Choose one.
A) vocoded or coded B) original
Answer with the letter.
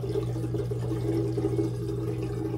B